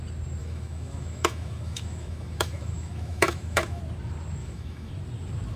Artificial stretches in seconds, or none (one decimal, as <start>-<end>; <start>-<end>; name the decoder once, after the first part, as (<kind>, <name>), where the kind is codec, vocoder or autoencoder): 0.4-3.8 (autoencoder, DAC-VAE); 4.4-4.9